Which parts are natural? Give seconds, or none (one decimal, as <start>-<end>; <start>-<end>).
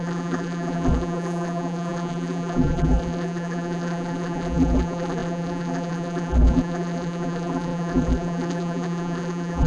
none